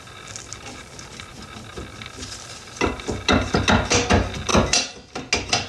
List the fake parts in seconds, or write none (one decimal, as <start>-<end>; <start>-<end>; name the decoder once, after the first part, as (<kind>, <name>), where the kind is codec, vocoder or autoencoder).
none